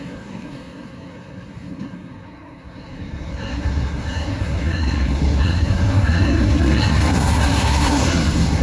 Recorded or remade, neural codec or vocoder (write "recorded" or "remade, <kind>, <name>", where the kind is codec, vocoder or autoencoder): remade, codec, SNAC